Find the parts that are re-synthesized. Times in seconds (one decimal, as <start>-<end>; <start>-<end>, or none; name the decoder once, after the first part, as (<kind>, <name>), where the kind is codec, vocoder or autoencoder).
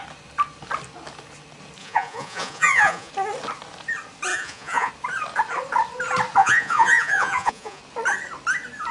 1.8-3.1 (vocoder, Vocos); 4.3-4.9; 6.4-7.8